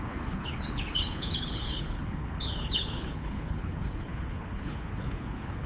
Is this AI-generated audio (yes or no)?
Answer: yes